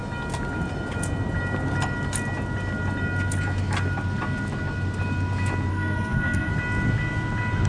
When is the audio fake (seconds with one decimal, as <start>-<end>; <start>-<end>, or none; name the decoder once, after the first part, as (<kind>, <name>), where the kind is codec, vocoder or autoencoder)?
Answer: 5.7-6.5 (codec, SNAC)